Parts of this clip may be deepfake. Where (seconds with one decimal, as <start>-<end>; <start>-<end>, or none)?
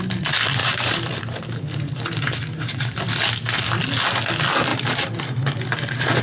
0.6-3.1; 4.7-6.2